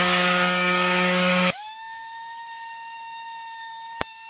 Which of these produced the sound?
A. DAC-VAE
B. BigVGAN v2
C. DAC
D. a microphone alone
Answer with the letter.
C